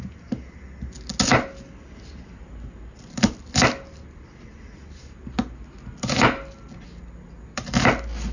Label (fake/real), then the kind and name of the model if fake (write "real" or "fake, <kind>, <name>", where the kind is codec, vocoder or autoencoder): real